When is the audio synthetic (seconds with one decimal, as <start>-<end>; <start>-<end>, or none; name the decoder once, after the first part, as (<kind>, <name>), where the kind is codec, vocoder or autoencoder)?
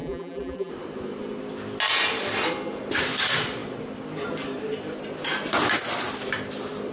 0.0-0.7 (vocoder, BigVGAN v2)